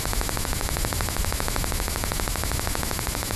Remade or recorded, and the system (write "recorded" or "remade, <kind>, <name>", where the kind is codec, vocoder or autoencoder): remade, autoencoder, DAC-VAE